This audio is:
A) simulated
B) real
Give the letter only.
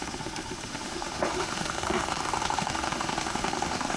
A